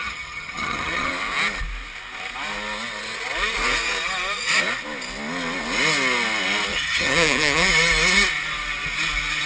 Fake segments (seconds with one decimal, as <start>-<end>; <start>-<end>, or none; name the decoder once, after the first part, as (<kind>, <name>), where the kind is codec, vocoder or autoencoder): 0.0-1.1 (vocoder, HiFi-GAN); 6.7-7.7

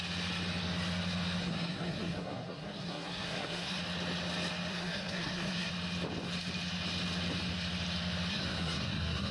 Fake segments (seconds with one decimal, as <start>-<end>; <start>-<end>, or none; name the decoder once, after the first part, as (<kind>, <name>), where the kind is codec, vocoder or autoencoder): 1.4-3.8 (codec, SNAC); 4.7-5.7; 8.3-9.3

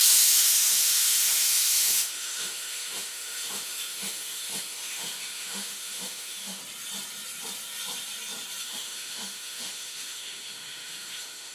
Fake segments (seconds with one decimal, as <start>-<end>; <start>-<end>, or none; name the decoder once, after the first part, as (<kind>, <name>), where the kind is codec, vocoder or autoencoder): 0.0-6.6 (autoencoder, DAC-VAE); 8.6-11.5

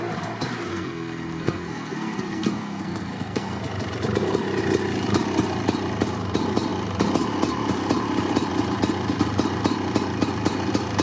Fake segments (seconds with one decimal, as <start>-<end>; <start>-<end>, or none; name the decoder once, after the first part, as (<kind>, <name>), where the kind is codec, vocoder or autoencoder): 0.7-3.6 (codec, SNAC)